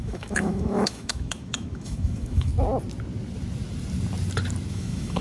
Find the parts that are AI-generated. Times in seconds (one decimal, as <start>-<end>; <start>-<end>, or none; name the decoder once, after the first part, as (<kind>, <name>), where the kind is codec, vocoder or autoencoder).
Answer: 0.0-2.5 (autoencoder, DAC-VAE); 4.7-5.2